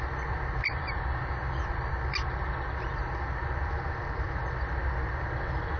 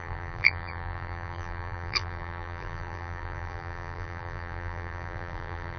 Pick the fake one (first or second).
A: second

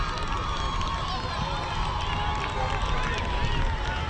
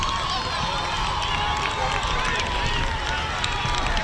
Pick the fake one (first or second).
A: second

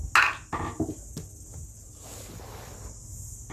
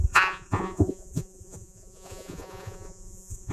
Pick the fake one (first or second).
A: second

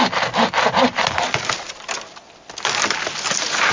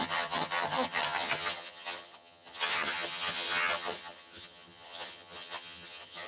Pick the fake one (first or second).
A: second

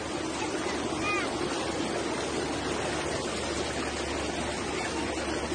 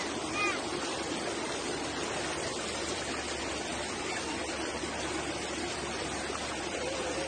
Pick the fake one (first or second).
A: second